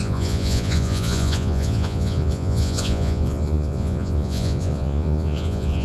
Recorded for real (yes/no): no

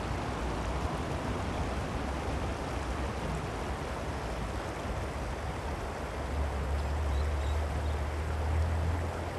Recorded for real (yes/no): yes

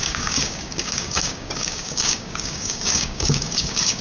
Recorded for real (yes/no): no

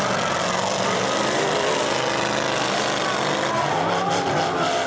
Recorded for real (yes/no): yes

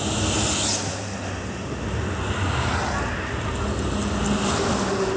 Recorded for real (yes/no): yes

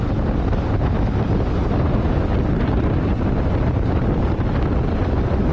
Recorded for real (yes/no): yes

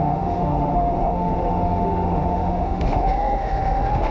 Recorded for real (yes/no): no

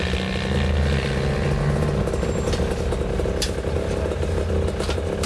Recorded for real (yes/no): yes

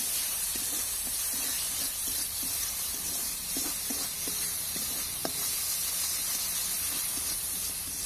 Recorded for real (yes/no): yes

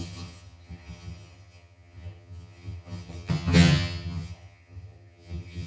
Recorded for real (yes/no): no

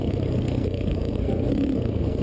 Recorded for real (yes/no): no